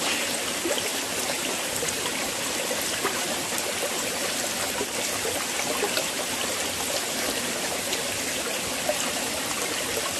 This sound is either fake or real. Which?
real